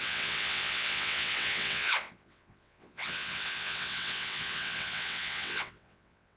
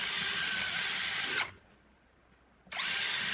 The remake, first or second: first